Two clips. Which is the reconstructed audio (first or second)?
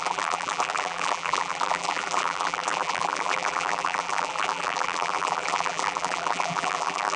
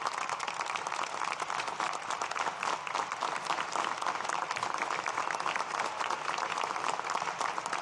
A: first